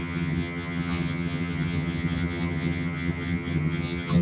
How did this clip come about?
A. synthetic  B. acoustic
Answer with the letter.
A